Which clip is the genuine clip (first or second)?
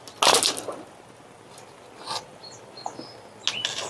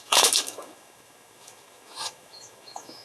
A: first